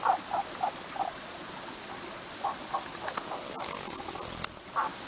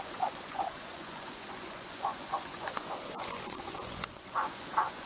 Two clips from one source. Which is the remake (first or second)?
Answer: second